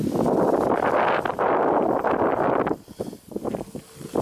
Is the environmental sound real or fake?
real